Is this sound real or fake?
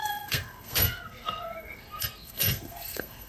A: fake